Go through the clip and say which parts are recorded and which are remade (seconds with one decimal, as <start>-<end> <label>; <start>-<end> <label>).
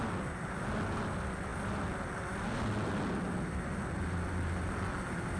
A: 0.0-5.4 recorded